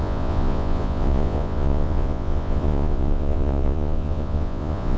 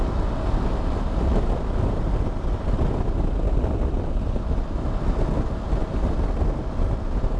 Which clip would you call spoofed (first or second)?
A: first